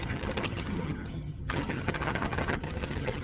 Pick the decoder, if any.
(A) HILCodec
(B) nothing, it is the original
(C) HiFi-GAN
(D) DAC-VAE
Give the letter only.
C